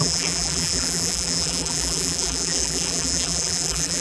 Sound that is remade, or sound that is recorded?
remade